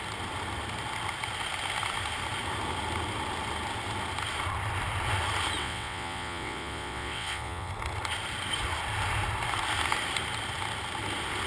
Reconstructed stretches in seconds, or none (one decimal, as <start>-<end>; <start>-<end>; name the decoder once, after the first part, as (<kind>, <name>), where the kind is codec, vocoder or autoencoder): 5.6-7.7 (vocoder, WaveNeXt)